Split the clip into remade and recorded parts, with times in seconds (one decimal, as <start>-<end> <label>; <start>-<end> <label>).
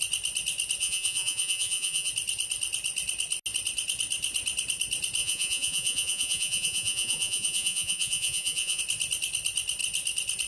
0.0-0.8 recorded; 0.8-2.1 remade; 2.1-5.2 recorded; 5.2-8.8 remade; 8.8-10.5 recorded